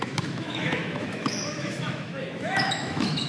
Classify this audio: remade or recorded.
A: remade